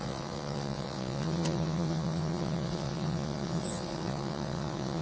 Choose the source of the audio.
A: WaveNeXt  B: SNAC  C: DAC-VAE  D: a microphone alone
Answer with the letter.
A